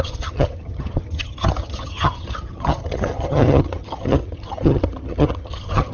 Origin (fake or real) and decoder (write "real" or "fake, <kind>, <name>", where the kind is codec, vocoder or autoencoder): fake, vocoder, HiFi-GAN